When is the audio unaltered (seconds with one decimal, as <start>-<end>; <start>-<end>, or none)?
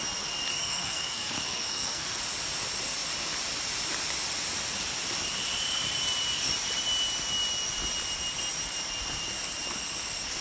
0.0-0.5; 2.2-10.4